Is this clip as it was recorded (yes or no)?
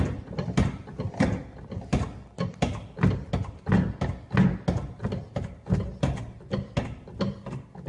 yes